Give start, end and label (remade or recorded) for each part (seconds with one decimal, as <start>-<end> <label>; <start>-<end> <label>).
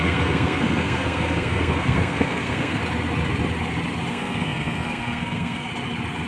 0.0-2.8 remade; 2.8-4.1 recorded; 4.1-5.7 remade; 5.7-6.3 recorded